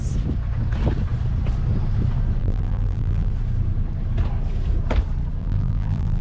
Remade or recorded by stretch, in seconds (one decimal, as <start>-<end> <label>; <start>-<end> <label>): 0.0-2.4 recorded; 2.4-3.3 remade; 3.3-5.4 recorded; 5.4-6.2 remade